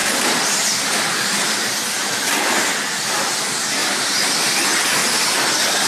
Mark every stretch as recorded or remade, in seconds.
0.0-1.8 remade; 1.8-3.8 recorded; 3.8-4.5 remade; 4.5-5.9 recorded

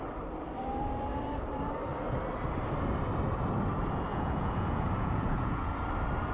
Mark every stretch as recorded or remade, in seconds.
0.0-4.1 recorded; 4.1-5.7 remade; 5.7-6.3 recorded

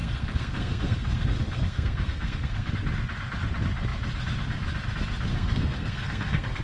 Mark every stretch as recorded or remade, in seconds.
0.0-2.7 remade; 2.7-5.3 recorded; 5.3-6.6 remade

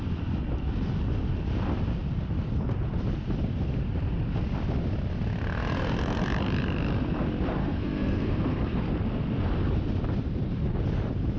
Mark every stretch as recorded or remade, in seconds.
0.0-7.6 recorded; 7.6-8.8 remade; 8.8-11.4 recorded

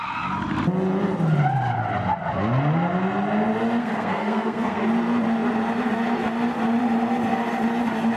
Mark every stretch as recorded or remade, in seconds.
0.0-3.8 recorded; 3.8-4.8 remade; 4.8-8.2 recorded